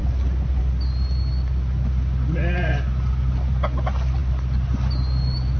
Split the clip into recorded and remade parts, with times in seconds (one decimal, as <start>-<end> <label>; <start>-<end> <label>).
0.0-5.6 recorded